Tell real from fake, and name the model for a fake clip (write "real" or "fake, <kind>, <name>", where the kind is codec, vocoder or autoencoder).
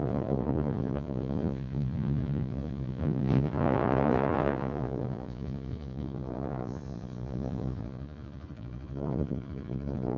fake, vocoder, Vocos